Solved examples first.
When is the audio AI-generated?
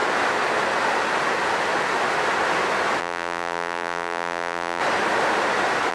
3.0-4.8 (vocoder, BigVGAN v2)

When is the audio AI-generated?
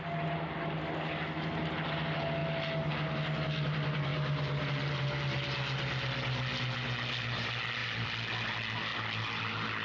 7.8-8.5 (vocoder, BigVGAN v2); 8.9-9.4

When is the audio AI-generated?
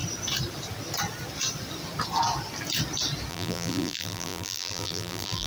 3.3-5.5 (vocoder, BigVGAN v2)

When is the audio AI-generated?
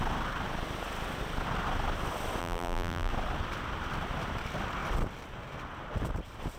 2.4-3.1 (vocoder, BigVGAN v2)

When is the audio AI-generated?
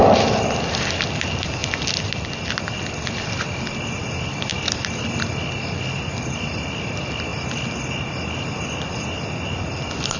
1.6-3.5 (vocoder, BigVGAN v2); 7.3-8.0